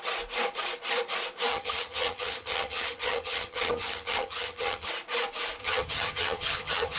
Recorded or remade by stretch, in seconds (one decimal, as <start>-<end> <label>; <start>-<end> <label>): 0.0-1.5 recorded; 1.5-4.9 remade; 4.9-5.6 recorded; 5.6-7.0 remade